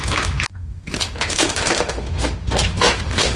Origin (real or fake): fake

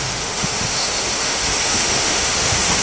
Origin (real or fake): fake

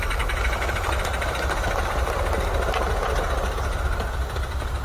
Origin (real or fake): real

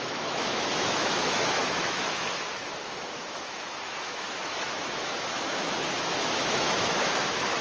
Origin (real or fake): fake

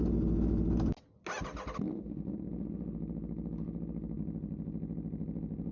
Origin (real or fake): real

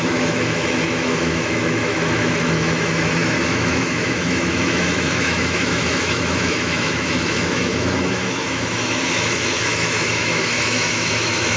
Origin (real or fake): fake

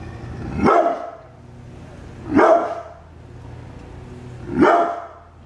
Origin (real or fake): real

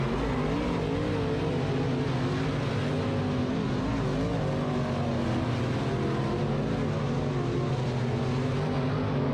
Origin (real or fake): real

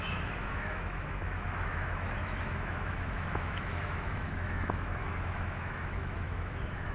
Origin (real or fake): fake